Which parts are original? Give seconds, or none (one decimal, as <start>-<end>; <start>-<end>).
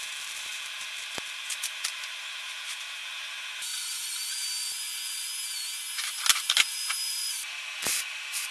3.0-6.7